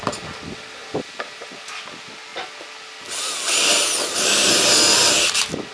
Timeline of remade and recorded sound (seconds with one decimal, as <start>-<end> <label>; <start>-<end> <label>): 0.0-5.7 recorded